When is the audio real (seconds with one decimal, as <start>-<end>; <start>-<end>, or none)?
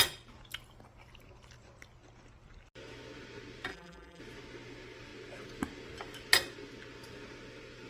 0.0-3.7; 4.2-7.9